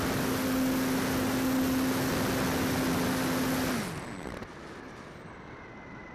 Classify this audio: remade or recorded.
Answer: recorded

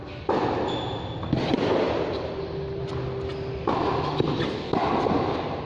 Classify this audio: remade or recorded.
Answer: recorded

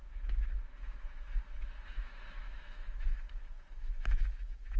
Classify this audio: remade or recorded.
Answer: remade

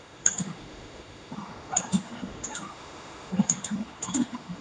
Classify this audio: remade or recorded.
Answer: remade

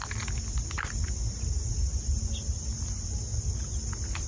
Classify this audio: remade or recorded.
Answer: recorded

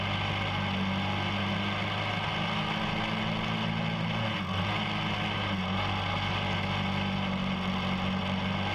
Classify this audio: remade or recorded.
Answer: recorded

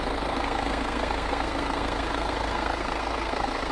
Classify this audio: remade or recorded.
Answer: remade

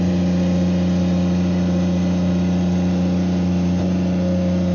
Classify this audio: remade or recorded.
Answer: recorded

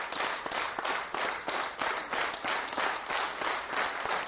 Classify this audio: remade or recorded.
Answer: recorded